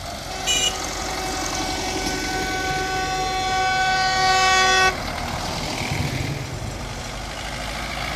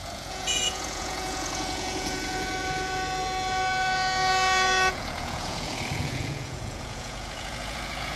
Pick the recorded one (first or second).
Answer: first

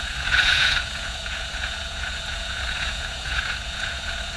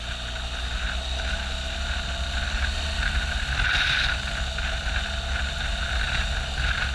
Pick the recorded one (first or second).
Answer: second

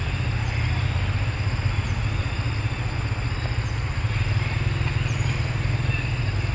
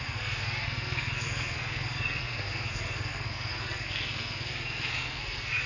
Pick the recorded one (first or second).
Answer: first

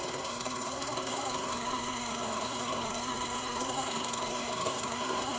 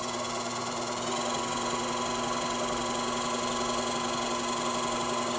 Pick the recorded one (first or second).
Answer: second